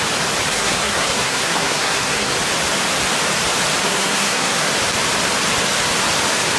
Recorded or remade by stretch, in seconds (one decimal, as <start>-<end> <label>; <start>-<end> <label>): 0.0-0.5 recorded; 0.5-2.3 remade; 2.3-3.8 recorded; 3.8-4.7 remade; 4.7-6.6 recorded